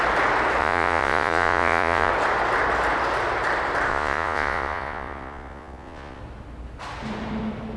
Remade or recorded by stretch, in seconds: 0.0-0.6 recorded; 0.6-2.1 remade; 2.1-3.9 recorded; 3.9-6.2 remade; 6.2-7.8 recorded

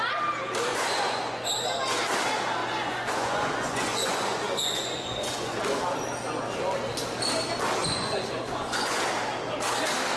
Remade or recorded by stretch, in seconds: 0.0-0.7 recorded; 0.7-1.5 remade; 1.5-2.6 recorded; 2.6-5.6 remade; 5.6-7.8 recorded; 7.8-9.0 remade; 9.0-10.2 recorded

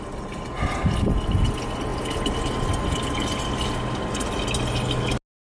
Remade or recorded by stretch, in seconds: 0.0-5.5 recorded

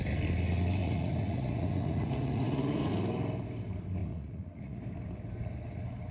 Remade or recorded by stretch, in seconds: 0.0-0.8 recorded; 0.8-2.9 remade; 2.9-4.0 recorded; 4.0-4.8 remade; 4.8-6.1 recorded

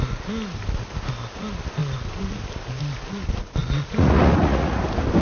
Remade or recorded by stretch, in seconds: 0.0-3.6 recorded; 3.6-4.8 remade; 4.8-5.2 recorded